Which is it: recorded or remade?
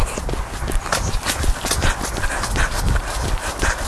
recorded